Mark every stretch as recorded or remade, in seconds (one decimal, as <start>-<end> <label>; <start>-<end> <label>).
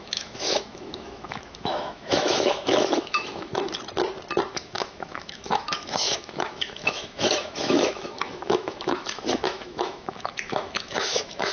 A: 0.0-3.5 remade; 3.5-4.5 recorded; 4.5-11.5 remade